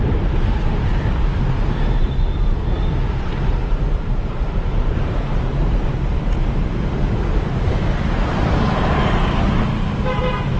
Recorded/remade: remade